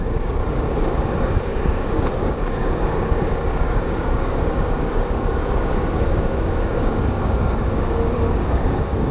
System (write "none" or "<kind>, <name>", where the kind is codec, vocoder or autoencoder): codec, DAC